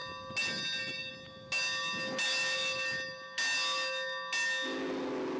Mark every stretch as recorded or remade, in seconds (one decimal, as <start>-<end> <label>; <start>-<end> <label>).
0.0-5.4 recorded